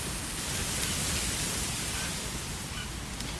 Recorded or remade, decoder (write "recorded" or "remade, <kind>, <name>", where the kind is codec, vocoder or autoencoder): recorded